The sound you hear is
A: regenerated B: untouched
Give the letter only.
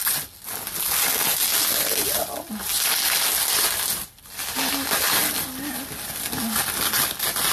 B